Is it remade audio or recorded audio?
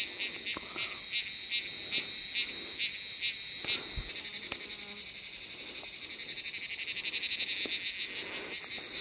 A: recorded